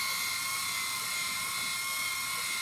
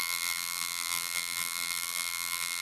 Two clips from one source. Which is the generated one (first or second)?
second